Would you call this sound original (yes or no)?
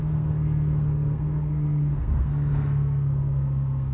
no